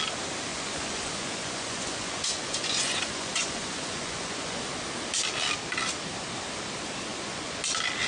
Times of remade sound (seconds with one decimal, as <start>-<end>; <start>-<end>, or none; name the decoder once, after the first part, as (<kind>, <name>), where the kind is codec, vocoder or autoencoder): 0.5-4.6 (vocoder, Vocos); 7.1-7.6